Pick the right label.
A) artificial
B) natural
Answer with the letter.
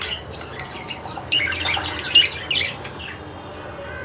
B